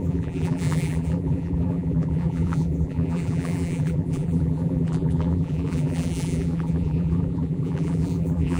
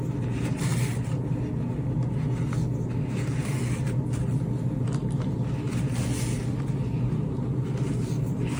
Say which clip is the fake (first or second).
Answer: first